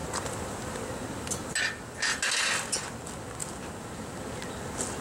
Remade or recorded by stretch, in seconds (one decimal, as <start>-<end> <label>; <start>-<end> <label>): 0.0-5.0 recorded